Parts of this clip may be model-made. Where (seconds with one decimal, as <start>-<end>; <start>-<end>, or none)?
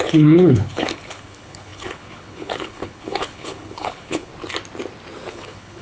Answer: 0.0-4.3; 5.3-5.8